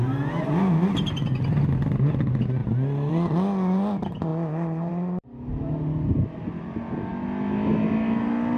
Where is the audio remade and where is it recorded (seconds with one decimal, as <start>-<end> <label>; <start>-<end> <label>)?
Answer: 0.0-8.6 recorded